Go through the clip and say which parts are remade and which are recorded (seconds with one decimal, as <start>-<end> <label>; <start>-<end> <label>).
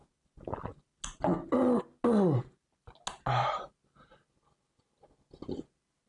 0.0-6.1 recorded